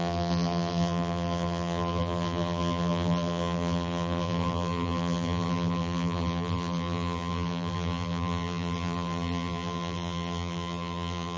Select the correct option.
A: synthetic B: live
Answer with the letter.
A